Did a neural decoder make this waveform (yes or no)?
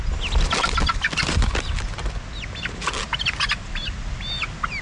no